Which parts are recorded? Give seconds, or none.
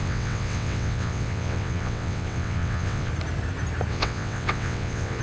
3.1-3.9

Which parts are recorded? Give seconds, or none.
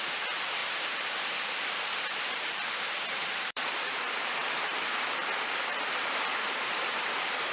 0.0-0.6; 1.5-2.3; 5.1-6.3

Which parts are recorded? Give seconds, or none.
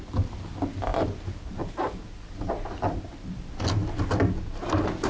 0.0-5.1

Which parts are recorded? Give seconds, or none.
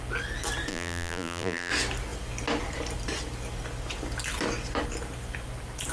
0.0-0.7; 1.7-5.9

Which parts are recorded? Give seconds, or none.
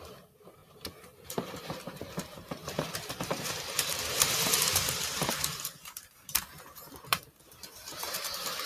none